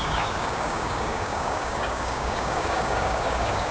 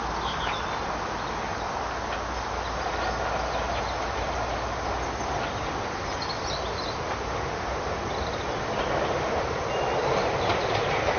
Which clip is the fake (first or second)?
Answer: first